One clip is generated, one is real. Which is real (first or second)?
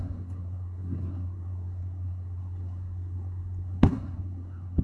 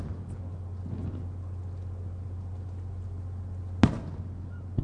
second